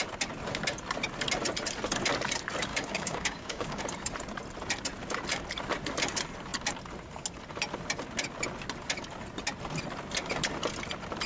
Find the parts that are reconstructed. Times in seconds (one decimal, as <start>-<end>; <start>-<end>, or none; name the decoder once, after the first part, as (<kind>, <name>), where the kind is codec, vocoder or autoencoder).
2.7-3.8 (codec, DAC)

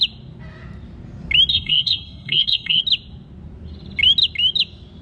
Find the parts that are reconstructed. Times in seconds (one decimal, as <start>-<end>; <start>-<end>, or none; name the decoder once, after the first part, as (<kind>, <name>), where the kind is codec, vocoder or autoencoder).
1.5-2.8 (codec, SNAC)

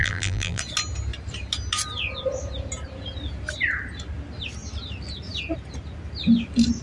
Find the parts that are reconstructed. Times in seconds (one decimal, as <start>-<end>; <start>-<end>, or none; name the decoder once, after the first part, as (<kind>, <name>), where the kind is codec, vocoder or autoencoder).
0.0-0.6 (vocoder, BigVGAN v2)

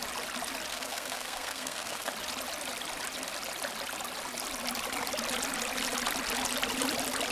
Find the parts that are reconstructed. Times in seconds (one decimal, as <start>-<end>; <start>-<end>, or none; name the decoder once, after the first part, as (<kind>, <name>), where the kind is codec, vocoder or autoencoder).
0.7-2.1 (codec, SNAC)